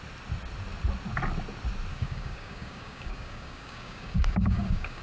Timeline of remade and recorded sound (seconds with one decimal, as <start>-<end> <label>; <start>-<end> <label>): 0.0-1.9 recorded; 1.9-5.0 remade